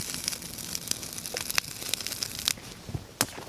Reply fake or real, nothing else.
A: real